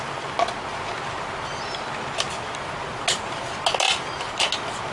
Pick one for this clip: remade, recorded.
recorded